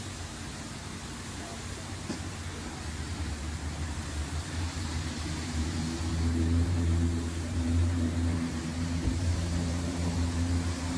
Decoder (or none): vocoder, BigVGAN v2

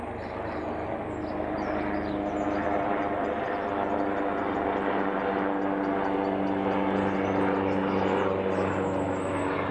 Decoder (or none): none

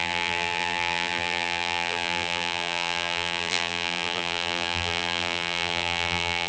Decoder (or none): vocoder, BigVGAN v2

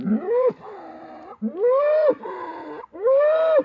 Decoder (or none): vocoder, BigVGAN v2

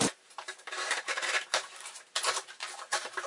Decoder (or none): vocoder, BigVGAN v2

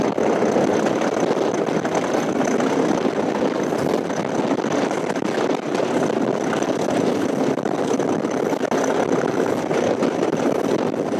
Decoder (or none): none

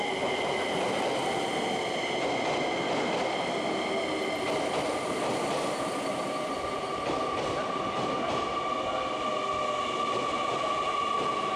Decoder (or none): none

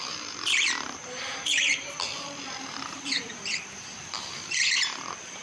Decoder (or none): vocoder, BigVGAN v2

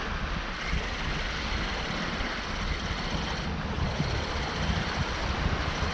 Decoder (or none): none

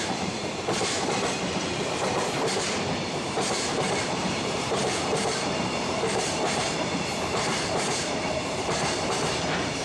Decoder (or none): vocoder, BigVGAN v2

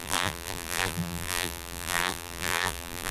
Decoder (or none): vocoder, BigVGAN v2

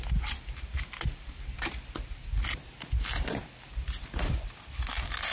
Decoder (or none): none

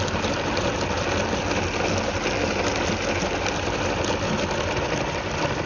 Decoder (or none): none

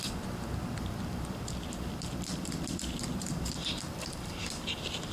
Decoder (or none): vocoder, BigVGAN v2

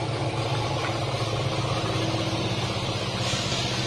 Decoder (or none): none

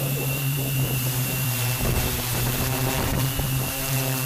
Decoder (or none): vocoder, BigVGAN v2